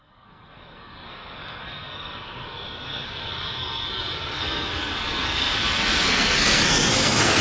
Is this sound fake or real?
fake